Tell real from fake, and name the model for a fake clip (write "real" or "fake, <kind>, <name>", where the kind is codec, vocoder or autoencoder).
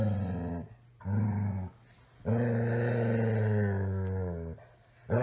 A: real